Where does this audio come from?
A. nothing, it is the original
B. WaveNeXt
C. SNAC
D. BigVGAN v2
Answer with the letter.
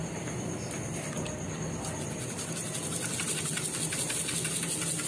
A